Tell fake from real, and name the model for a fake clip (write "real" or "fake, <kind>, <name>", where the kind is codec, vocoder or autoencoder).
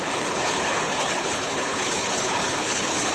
fake, codec, HILCodec